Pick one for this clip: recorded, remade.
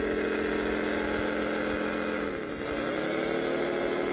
recorded